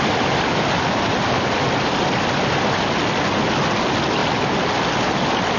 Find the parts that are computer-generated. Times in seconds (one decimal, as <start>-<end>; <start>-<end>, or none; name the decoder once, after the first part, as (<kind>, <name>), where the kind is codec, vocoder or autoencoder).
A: none